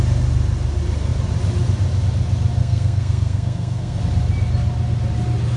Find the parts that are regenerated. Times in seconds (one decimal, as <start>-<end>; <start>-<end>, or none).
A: 2.6-4.0